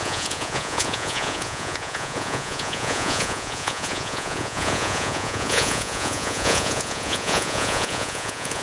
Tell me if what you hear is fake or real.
fake